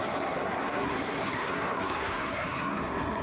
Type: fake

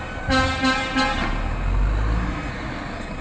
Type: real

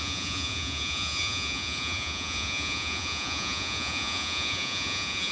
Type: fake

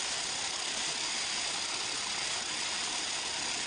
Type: real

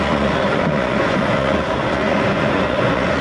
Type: fake